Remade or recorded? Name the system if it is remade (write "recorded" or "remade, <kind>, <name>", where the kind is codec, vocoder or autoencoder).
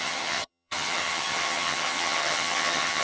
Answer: remade, vocoder, HiFi-GAN